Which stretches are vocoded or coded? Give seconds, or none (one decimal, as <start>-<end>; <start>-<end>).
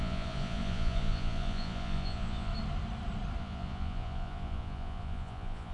0.0-2.5; 3.4-5.7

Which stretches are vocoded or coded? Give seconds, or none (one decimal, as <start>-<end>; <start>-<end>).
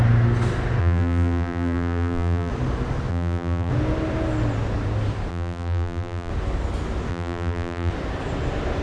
0.8-2.5; 3.1-3.7; 5.3-6.3; 7.1-7.9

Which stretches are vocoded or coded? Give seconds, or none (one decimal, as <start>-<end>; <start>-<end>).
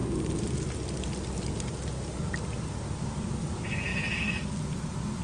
none